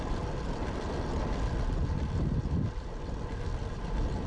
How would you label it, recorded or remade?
recorded